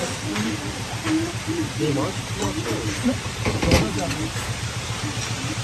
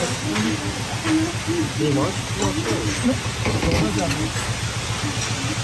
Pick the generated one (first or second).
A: first